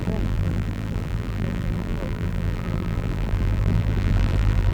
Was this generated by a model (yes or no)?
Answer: yes